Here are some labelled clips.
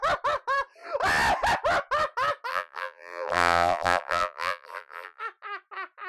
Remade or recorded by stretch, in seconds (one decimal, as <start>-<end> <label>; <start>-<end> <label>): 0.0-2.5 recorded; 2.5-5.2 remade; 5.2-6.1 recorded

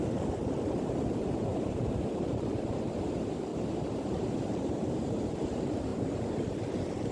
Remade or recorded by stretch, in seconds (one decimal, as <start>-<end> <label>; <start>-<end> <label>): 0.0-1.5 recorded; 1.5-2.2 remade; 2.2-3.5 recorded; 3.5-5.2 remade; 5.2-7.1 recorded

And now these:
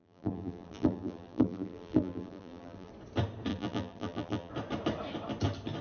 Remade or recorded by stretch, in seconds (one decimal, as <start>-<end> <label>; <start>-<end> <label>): 0.0-2.9 remade; 2.9-3.5 recorded; 3.5-4.5 remade; 4.5-5.8 recorded

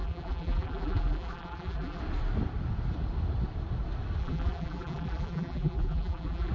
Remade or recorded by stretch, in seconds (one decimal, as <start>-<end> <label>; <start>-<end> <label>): 0.0-2.0 remade; 2.0-4.2 recorded; 4.2-6.5 remade

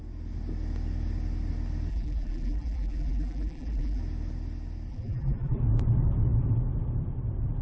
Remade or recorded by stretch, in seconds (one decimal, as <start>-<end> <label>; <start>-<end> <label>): 0.0-1.9 recorded; 1.9-4.0 remade; 4.0-4.9 recorded; 4.9-5.6 remade; 5.6-7.6 recorded